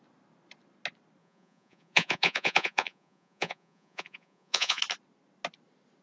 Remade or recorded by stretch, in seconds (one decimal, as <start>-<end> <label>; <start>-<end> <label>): 0.0-1.2 recorded; 1.2-4.8 remade; 4.8-6.0 recorded